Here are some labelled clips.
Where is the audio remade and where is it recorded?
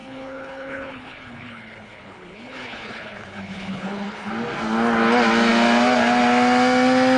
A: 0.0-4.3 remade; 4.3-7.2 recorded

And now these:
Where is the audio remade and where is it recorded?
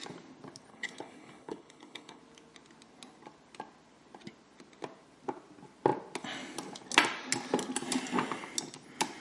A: 0.0-0.7 recorded; 0.7-2.2 remade; 2.2-9.2 recorded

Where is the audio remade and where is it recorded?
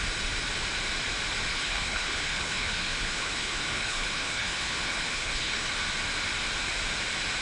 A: 0.0-1.5 recorded; 1.5-5.7 remade; 5.7-7.4 recorded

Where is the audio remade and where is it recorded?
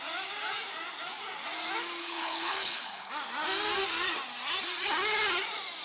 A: 0.0-2.0 recorded; 2.0-3.1 remade; 3.1-5.8 recorded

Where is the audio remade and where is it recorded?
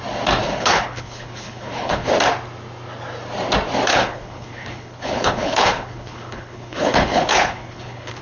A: 0.0-0.4 recorded; 0.4-2.1 remade; 2.1-3.9 recorded; 3.9-8.2 remade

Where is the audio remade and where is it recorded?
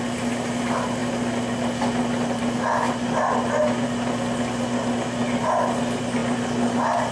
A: 0.0-7.1 recorded